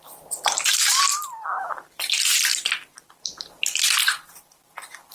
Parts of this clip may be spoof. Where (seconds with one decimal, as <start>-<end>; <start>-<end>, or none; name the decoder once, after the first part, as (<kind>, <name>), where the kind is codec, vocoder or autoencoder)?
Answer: 2.5-4.6 (vocoder, BigVGAN v2)